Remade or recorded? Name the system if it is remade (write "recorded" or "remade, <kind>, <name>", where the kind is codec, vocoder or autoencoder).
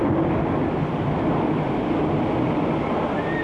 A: recorded